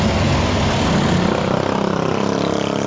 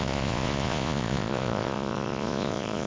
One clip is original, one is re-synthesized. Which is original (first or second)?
first